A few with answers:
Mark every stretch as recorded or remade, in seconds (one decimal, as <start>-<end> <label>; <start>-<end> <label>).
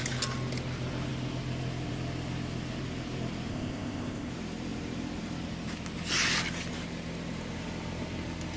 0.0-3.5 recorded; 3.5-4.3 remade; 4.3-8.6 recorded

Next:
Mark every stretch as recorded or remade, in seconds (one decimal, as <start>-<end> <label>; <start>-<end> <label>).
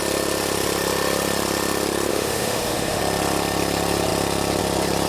0.0-2.1 recorded; 2.1-3.0 remade; 3.0-5.1 recorded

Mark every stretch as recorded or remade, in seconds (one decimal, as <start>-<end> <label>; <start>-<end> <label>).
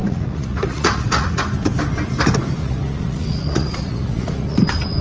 0.0-1.4 remade; 1.4-2.6 recorded; 2.6-4.6 remade; 4.6-5.0 recorded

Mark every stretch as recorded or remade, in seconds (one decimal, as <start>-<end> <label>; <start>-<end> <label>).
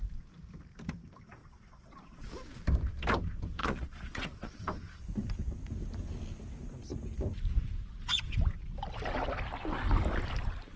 0.0-1.4 recorded; 1.4-2.3 remade; 2.3-3.6 recorded; 3.6-4.6 remade; 4.6-10.8 recorded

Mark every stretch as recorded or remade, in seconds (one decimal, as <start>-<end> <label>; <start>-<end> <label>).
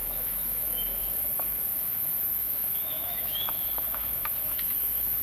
0.0-5.2 remade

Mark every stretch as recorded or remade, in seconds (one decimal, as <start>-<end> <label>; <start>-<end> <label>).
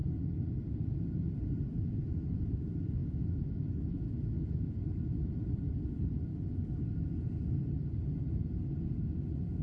0.0-3.0 recorded; 3.0-5.3 remade; 5.3-9.6 recorded